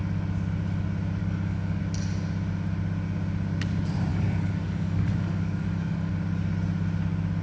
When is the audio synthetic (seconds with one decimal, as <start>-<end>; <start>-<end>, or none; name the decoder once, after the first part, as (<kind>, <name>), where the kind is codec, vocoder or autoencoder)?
1.2-1.8 (codec, DAC); 4.1-6.1